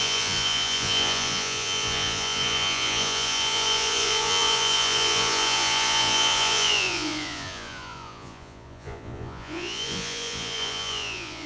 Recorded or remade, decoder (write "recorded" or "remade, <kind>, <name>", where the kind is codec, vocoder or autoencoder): remade, vocoder, Vocos